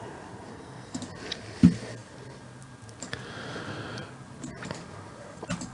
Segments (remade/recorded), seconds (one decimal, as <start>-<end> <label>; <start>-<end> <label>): 0.0-0.5 recorded; 0.5-1.0 remade; 1.0-5.7 recorded